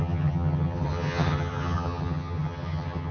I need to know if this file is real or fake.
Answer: fake